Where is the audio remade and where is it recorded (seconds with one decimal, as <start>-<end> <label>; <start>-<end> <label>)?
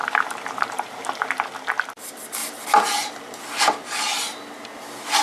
0.0-1.0 remade; 1.0-2.4 recorded; 2.4-3.4 remade; 3.4-5.2 recorded